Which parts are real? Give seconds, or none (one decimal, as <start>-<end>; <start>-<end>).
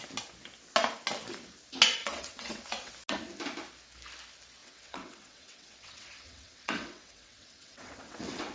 0.0-2.0; 2.9-4.6